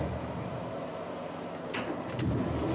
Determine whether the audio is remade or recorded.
recorded